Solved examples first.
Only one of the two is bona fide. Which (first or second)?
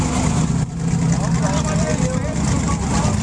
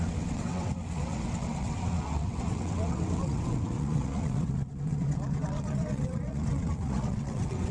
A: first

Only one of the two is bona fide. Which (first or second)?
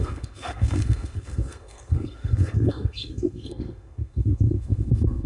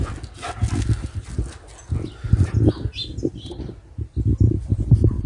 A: second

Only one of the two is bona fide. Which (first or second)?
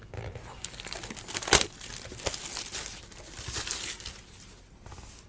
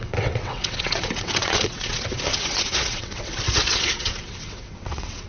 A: first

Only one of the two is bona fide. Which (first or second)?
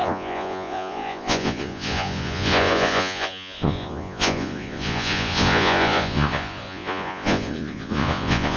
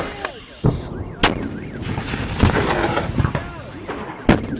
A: second